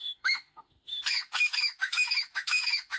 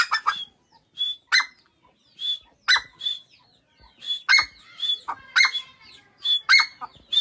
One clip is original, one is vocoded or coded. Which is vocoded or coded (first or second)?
first